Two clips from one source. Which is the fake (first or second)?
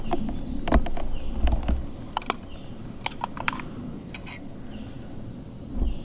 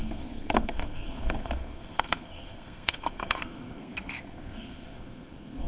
second